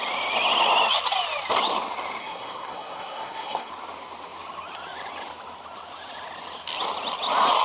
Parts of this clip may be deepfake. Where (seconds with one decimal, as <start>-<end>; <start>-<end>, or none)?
2.2-3.7